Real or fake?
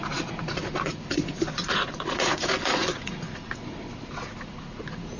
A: fake